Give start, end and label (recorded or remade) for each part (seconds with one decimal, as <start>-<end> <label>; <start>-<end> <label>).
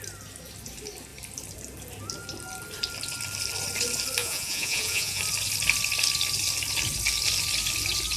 0.0-4.2 recorded; 4.2-5.2 remade; 5.2-8.2 recorded